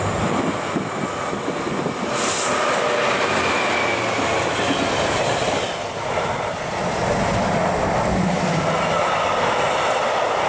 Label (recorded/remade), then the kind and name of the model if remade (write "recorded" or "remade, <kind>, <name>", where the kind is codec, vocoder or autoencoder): recorded